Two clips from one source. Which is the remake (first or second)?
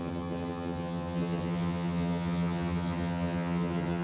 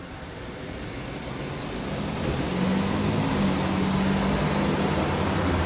first